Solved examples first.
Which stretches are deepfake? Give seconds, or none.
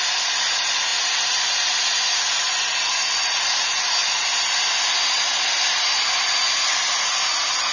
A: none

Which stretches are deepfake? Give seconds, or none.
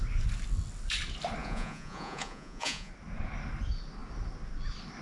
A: 1.4-2.9 (vocoder, Vocos)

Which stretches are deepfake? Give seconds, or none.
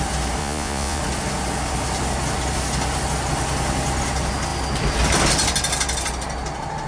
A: 0.4-1.0 (vocoder, Vocos)